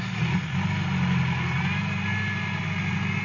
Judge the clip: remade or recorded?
recorded